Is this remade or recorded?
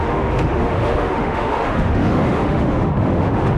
remade